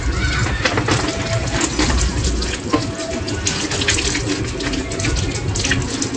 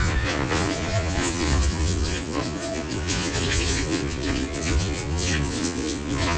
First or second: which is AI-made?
second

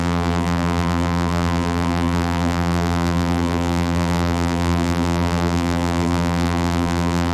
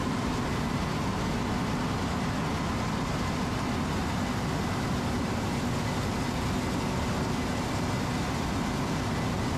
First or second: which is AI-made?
first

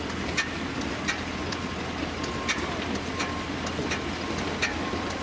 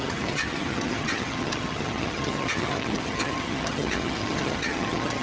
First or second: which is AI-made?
second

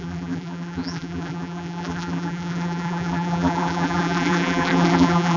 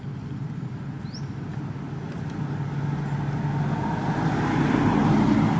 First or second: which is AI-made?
first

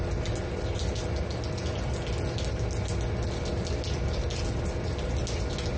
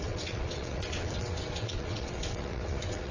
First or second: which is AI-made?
second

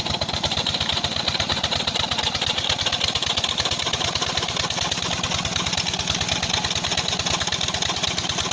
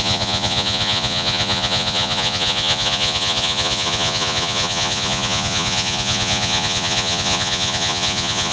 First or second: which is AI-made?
second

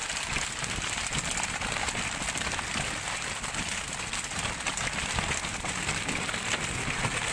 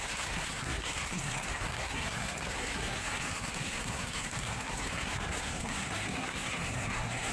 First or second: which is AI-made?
second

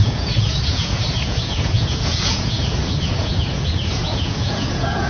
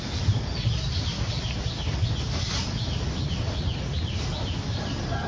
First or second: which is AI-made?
first